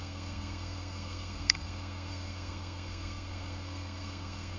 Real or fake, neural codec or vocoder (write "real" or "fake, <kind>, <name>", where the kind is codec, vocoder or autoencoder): fake, codec, SNAC